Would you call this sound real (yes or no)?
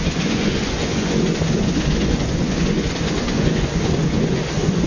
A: no